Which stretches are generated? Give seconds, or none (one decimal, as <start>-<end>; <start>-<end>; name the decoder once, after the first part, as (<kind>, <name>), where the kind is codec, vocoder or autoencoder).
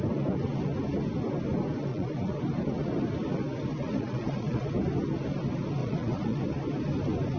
1.9-2.4 (vocoder, Vocos); 3.7-4.7; 5.8-6.4